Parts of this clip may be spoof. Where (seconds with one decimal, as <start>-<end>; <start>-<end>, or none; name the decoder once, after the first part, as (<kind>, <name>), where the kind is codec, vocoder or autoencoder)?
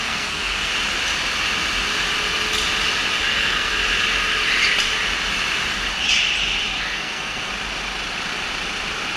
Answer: 0.0-0.7 (codec, SNAC); 3.2-3.8; 6.8-7.5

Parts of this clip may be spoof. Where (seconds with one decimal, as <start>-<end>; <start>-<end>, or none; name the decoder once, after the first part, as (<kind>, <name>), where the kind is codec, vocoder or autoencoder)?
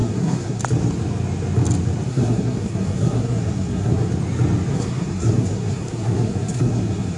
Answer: 0.0-0.6 (codec, SNAC); 2.1-4.1; 4.7-7.2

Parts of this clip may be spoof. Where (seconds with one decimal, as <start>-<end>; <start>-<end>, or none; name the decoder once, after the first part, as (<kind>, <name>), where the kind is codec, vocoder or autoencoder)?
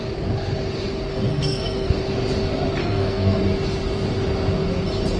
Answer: 1.1-2.0 (codec, SNAC); 2.8-3.4